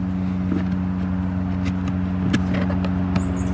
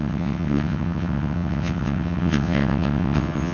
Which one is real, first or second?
first